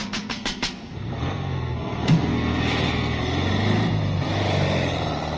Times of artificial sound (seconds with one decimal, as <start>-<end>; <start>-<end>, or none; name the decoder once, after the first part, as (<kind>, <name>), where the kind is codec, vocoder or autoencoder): 0.0-3.2 (codec, SNAC)